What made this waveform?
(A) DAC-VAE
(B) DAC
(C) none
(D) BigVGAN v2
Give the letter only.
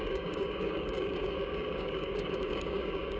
B